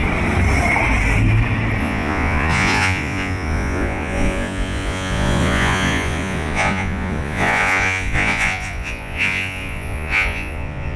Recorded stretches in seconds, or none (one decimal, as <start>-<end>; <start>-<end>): 0.0-1.8